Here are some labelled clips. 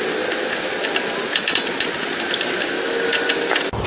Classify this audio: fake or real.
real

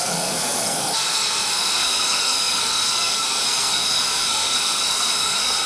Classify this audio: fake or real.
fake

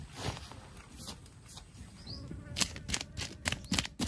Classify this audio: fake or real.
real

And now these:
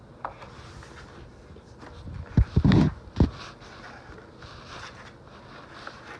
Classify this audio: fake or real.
real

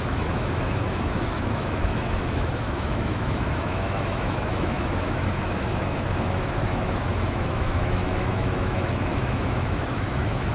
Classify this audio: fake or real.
fake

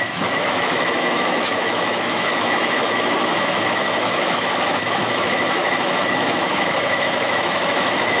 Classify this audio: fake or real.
fake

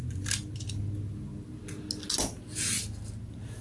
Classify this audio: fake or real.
real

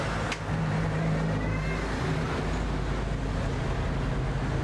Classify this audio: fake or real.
real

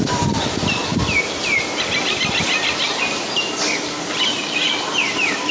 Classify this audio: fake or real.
real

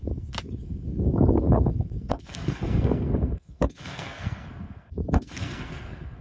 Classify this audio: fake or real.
fake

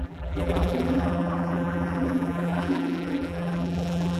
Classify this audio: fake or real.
fake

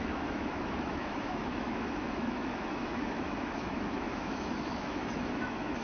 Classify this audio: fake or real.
fake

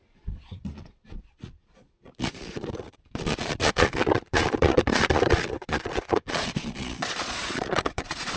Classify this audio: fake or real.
fake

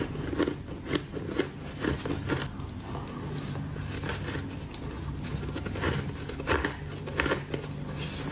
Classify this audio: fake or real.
real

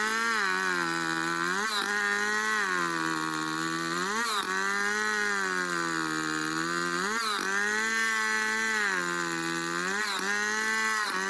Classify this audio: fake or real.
real